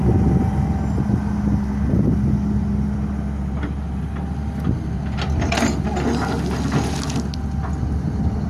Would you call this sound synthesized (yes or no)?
no